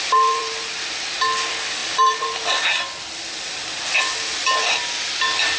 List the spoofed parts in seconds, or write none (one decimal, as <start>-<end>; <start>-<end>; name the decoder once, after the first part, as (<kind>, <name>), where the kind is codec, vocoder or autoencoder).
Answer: 0.0-5.6 (vocoder, BigVGAN v2)